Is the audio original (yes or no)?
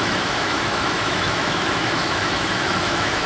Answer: no